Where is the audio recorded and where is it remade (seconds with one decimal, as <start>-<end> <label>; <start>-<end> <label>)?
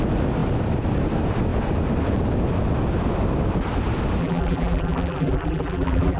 0.0-4.2 recorded; 4.2-6.2 remade